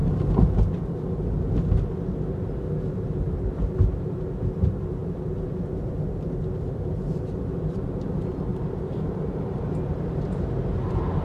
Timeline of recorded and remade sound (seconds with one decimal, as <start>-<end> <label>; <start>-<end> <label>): 0.0-0.6 remade; 0.6-8.5 recorded; 8.5-9.6 remade; 9.6-11.2 recorded